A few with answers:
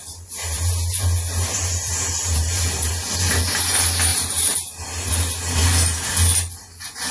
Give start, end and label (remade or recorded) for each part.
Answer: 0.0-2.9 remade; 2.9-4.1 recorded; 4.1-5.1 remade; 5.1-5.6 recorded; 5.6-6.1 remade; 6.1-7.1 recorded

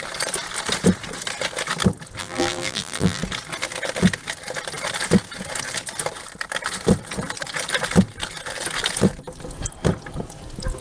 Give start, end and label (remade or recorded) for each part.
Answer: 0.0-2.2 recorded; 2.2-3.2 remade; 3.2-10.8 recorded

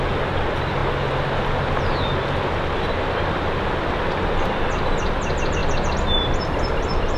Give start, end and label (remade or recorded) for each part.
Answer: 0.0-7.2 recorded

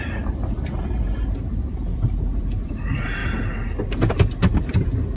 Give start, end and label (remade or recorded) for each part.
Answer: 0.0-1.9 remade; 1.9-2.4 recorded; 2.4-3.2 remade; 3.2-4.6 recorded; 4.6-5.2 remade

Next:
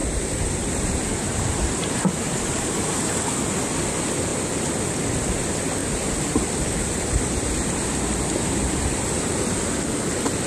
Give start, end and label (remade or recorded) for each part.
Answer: 0.0-3.1 remade; 3.1-5.8 recorded; 5.8-9.4 remade; 9.4-10.5 recorded